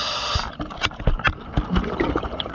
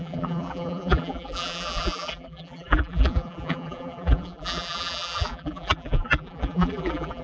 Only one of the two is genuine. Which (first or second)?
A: first